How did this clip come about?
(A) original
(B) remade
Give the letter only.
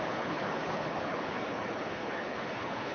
B